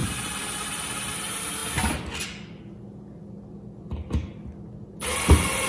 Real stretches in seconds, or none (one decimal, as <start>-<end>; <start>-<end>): 1.2-5.7